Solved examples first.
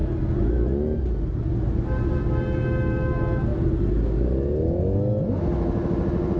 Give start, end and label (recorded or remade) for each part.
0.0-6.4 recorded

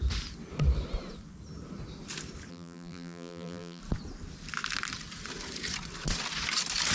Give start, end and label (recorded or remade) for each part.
0.0-2.5 recorded; 2.5-3.8 remade; 3.8-6.9 recorded

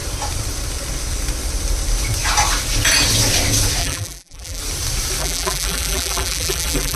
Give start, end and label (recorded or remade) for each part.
0.0-3.8 recorded; 3.8-4.6 remade; 4.6-5.2 recorded; 5.2-7.0 remade

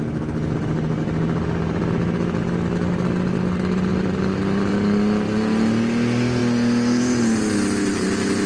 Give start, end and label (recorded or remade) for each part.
0.0-8.5 recorded

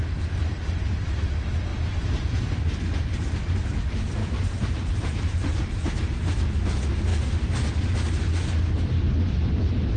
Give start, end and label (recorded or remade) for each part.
0.0-4.2 recorded; 4.2-6.4 remade; 6.4-10.0 recorded

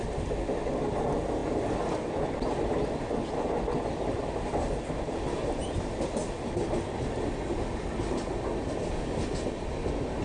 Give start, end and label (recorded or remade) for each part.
0.0-10.2 recorded

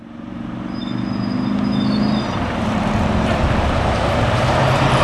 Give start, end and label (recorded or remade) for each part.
0.0-0.8 remade; 0.8-2.3 recorded; 2.3-5.0 remade